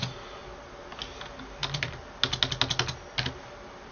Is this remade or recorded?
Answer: recorded